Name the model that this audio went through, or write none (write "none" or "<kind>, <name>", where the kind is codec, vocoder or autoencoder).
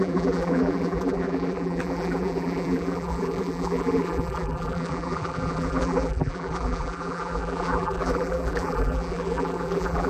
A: vocoder, BigVGAN v2